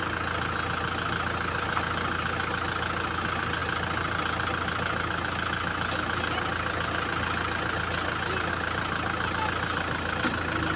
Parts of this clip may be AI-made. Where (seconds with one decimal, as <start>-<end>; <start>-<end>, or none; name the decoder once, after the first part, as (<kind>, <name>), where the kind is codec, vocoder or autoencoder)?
none